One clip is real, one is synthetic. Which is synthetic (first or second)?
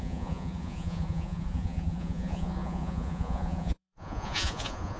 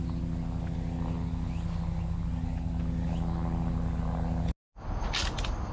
first